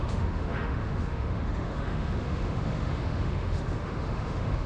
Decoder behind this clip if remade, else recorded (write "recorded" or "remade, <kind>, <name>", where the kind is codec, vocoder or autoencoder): remade, autoencoder, DAC-VAE